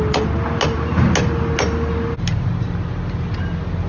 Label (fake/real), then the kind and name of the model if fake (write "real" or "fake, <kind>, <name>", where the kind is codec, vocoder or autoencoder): real